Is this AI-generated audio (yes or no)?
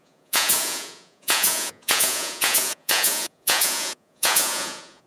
yes